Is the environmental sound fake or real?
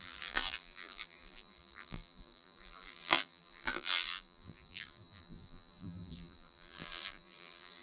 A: fake